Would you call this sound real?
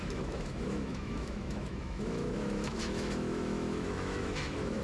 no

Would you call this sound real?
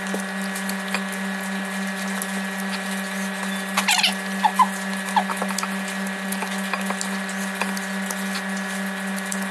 yes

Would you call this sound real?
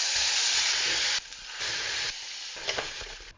yes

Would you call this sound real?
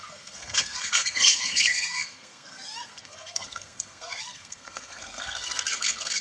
no